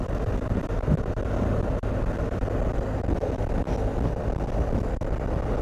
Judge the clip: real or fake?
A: real